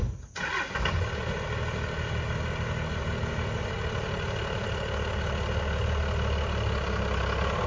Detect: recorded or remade recorded